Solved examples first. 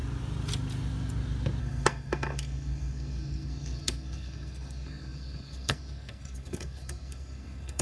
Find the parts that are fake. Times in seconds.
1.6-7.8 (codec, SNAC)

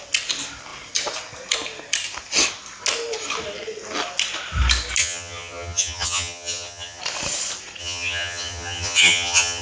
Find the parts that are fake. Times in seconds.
5.0-7.0 (vocoder, HiFi-GAN); 7.8-9.6

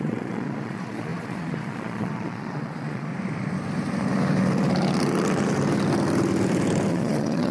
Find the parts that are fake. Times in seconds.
0.0-3.1 (vocoder, Vocos); 6.9-7.5